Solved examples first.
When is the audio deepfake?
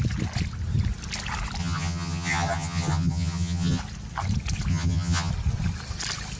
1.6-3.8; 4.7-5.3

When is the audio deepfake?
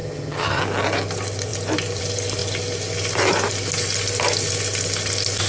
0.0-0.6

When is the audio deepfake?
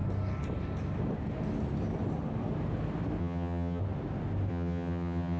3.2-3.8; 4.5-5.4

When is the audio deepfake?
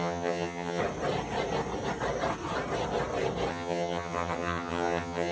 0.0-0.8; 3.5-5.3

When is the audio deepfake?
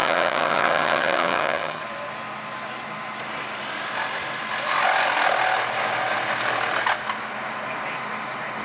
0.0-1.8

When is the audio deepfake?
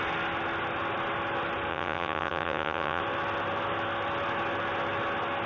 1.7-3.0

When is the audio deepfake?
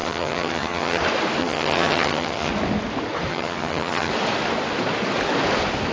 0.0-1.0; 1.4-2.5; 3.3-4.1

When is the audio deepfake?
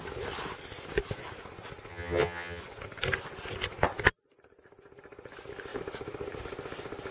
1.9-2.6